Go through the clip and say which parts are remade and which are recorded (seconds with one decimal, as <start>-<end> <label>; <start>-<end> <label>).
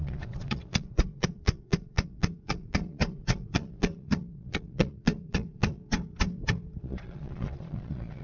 0.0-5.8 remade; 5.8-6.8 recorded; 6.8-8.2 remade